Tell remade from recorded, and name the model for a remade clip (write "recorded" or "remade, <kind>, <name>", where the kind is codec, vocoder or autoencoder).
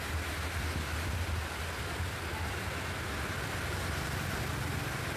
recorded